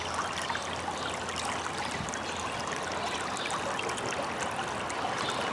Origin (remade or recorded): recorded